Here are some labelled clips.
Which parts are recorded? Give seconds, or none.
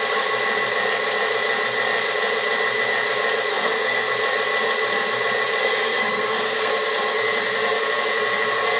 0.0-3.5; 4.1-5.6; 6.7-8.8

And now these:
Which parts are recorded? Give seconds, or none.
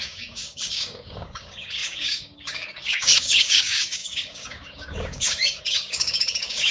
none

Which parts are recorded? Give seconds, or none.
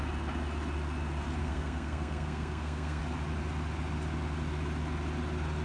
0.0-1.4; 3.0-5.6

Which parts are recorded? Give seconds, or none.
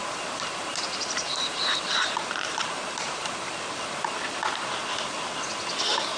3.5-6.2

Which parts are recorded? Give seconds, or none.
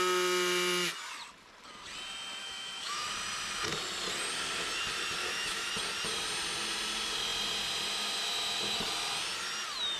0.0-2.4; 3.1-5.2; 5.7-10.0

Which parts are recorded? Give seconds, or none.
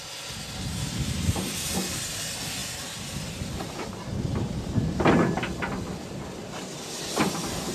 0.0-7.7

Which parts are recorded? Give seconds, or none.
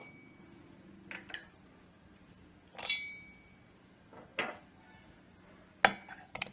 0.0-6.5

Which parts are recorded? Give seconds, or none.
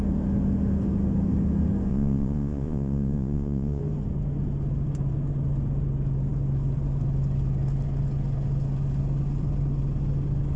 0.0-1.9; 3.8-10.6